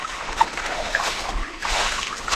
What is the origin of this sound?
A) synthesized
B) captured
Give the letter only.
A